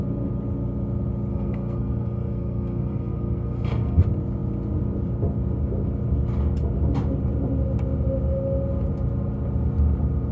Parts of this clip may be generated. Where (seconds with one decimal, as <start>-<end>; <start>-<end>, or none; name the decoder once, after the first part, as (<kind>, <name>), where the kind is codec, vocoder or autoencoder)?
1.3-4.0 (codec, SNAC)